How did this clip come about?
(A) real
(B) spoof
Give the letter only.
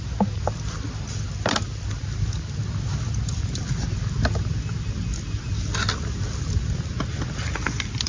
A